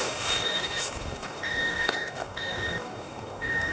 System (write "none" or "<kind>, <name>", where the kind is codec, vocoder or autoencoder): codec, DAC